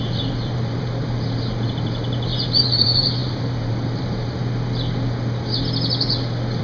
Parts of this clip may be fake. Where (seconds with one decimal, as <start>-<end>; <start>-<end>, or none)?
0.0-4.4

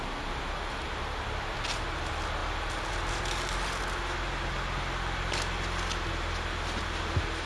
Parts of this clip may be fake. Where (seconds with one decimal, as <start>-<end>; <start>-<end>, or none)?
none

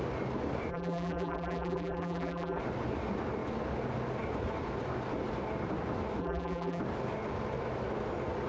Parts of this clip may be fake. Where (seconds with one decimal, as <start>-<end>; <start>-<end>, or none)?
0.7-2.6; 6.2-6.8

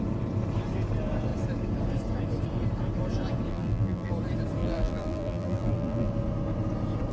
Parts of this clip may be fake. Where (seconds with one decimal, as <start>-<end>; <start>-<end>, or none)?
3.5-4.1; 4.6-6.1

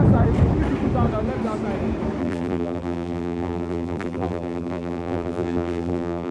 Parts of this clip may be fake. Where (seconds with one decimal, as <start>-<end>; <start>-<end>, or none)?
2.2-6.3

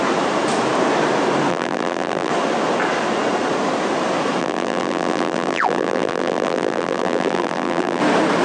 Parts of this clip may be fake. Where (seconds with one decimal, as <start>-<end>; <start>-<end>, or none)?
1.5-2.3; 4.4-8.0